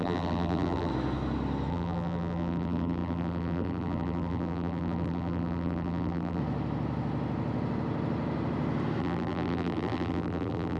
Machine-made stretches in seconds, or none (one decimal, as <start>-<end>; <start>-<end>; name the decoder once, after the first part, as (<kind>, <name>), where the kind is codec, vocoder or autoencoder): 0.0-0.9 (vocoder, BigVGAN v2); 1.7-6.4; 9.0-10.8